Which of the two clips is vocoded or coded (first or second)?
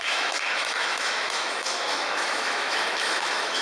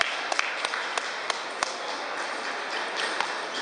first